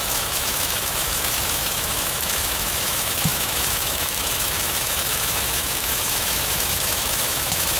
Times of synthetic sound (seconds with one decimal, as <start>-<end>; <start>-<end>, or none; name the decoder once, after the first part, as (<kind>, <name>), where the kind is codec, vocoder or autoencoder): 0.0-7.8 (autoencoder, DAC-VAE)